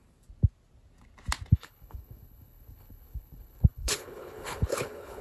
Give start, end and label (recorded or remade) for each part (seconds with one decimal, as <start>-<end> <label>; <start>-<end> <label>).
0.0-1.5 recorded; 1.5-5.2 remade